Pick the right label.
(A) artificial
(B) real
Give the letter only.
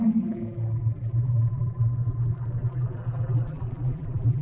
A